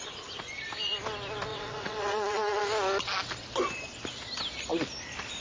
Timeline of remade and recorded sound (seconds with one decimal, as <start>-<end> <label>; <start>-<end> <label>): 0.0-1.5 recorded; 1.5-2.6 remade; 2.6-5.4 recorded